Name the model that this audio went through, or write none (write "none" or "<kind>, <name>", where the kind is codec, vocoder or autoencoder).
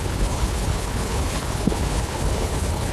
codec, HILCodec